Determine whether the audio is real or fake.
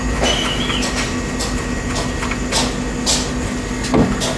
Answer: real